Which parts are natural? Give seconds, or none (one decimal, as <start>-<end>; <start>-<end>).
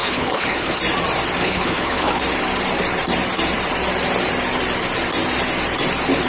0.8-1.4; 2.2-6.3